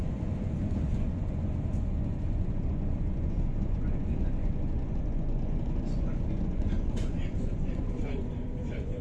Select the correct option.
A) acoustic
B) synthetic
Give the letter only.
B